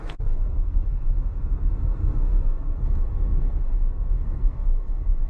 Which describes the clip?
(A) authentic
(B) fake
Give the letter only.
B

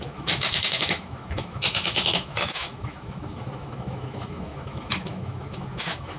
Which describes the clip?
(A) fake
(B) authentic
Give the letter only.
A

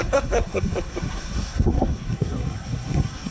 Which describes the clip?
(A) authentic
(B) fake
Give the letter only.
B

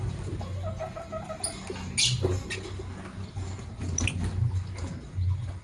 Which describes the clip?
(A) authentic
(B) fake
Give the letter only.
A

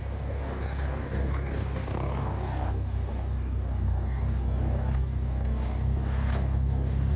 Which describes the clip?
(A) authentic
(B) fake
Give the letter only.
B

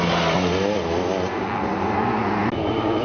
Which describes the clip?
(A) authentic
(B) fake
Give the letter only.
A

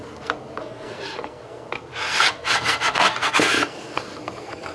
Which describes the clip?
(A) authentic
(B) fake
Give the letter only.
B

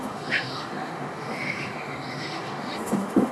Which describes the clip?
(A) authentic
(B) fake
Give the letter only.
B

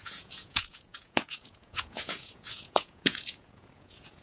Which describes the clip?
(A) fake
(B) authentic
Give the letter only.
A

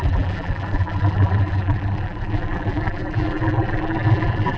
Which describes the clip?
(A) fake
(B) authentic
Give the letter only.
A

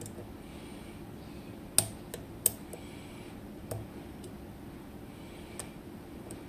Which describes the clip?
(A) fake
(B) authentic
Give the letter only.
B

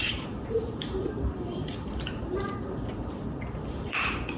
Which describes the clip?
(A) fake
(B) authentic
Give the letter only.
A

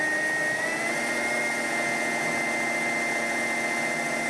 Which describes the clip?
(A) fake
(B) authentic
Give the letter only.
B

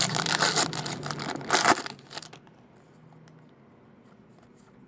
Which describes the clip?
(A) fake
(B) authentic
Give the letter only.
B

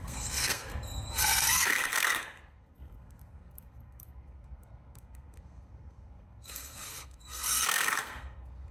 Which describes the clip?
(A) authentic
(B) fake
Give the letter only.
B